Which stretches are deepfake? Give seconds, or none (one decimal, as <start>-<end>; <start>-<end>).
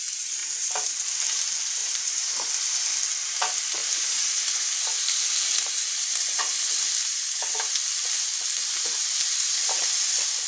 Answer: 0.4-1.2; 1.8-2.5; 3.8-6.4; 9.0-10.1